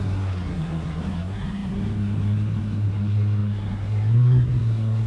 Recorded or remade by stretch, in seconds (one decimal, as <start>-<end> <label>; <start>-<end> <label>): 0.0-5.1 remade